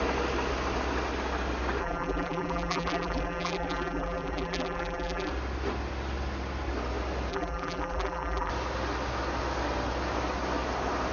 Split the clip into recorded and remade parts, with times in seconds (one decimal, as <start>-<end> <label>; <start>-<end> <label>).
0.0-1.8 recorded; 1.8-5.3 remade; 5.3-7.3 recorded; 7.3-8.5 remade; 8.5-11.1 recorded